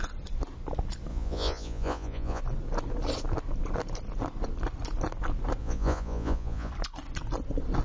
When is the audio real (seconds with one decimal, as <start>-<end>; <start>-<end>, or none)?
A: 0.0-1.1; 2.4-5.6; 6.7-7.8